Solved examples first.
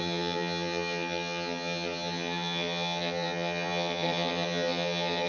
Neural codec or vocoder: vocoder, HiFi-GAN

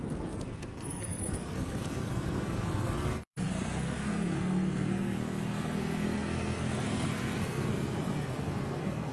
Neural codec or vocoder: codec, SNAC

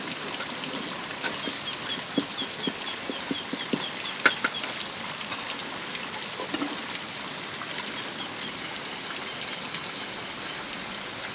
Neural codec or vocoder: none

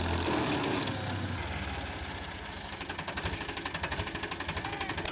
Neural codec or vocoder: none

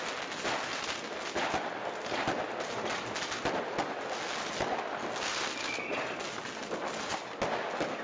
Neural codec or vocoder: none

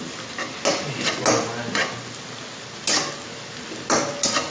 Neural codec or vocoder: none